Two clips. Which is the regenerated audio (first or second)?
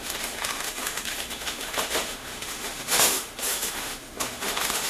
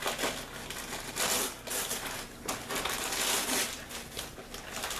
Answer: first